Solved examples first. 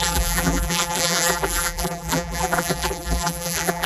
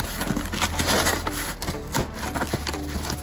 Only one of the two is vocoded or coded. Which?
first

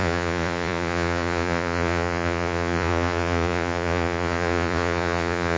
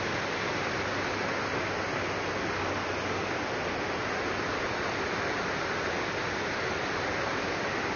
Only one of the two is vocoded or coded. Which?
first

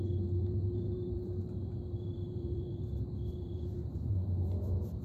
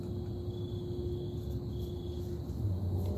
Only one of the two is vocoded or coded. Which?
first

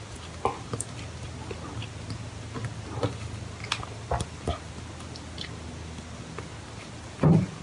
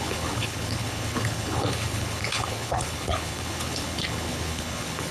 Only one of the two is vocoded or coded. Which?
second